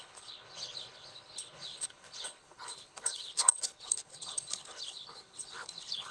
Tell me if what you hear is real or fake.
fake